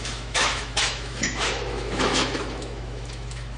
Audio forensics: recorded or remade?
remade